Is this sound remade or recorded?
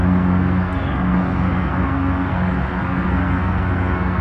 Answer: remade